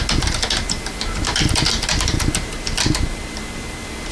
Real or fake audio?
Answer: real